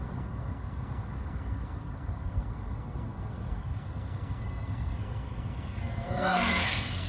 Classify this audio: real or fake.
fake